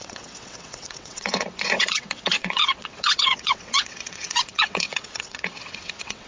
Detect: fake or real fake